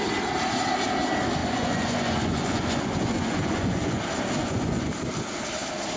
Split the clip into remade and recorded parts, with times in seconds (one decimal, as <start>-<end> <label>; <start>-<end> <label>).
0.0-1.4 recorded; 1.4-4.0 remade; 4.0-4.4 recorded; 4.4-4.9 remade; 4.9-6.0 recorded